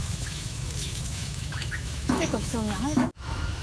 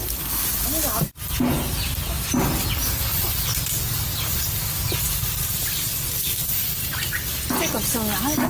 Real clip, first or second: second